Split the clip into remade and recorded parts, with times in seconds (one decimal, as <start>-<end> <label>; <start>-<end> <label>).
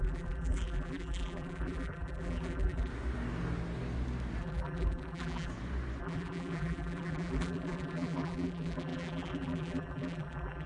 0.0-2.9 remade; 2.9-4.4 recorded; 4.4-5.5 remade; 5.5-6.0 recorded; 6.0-10.7 remade